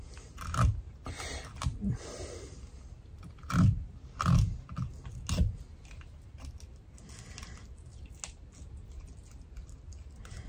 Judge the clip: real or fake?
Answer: real